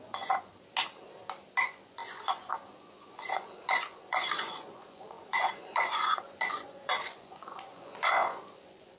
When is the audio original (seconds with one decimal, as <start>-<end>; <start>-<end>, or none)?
0.5-1.6